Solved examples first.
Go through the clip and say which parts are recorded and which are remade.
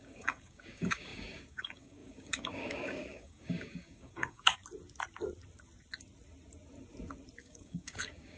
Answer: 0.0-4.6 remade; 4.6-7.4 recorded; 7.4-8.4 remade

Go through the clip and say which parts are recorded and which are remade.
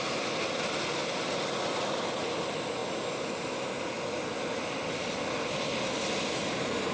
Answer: 0.0-6.9 recorded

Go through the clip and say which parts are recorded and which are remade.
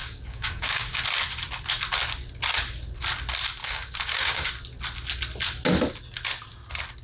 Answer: 0.0-1.0 remade; 1.0-3.6 recorded; 3.6-4.5 remade; 4.5-7.0 recorded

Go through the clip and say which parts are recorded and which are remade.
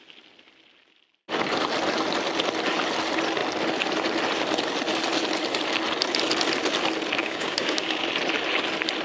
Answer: 0.0-7.2 recorded; 7.2-8.0 remade; 8.0-9.0 recorded